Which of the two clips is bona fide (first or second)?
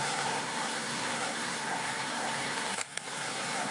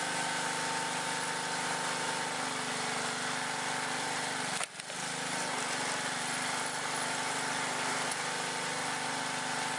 second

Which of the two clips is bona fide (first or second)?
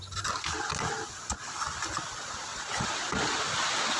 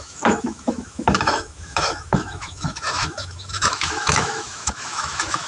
first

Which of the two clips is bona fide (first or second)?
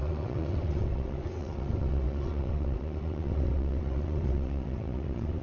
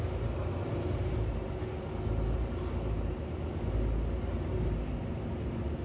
second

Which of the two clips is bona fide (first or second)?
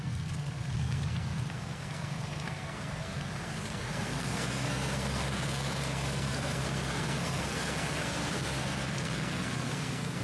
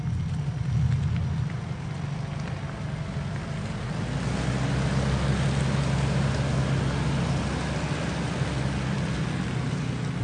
second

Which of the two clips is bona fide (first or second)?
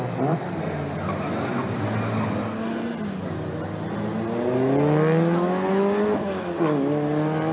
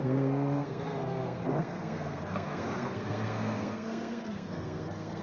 first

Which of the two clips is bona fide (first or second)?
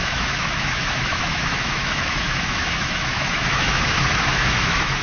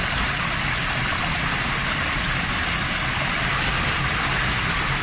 second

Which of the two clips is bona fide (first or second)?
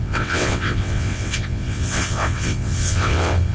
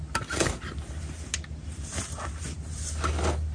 second